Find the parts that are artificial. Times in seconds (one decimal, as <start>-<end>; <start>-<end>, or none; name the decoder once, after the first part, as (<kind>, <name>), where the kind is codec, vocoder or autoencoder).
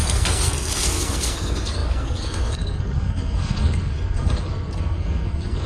0.0-5.7 (codec, SNAC)